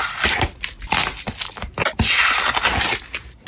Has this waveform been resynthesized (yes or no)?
no